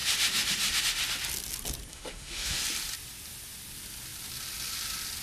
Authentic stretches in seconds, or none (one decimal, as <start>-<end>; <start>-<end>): 0.0-1.9; 2.6-5.2